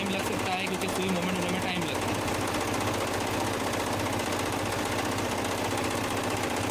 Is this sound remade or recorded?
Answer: recorded